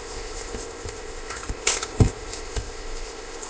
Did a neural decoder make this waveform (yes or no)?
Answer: yes